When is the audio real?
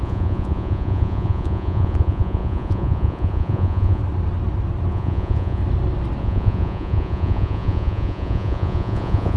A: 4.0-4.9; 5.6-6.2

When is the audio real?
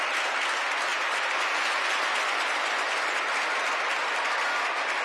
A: 0.0-0.9; 3.2-5.0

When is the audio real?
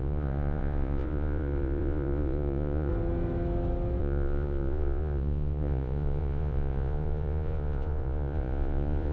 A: 2.9-4.0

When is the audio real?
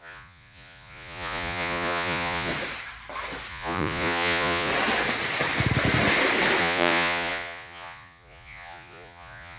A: 2.5-3.5; 4.7-6.6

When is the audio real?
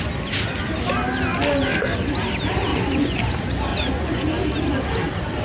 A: 0.0-2.7; 3.2-3.7; 4.3-5.4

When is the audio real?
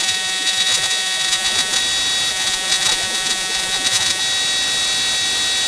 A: 1.8-2.3; 4.2-5.7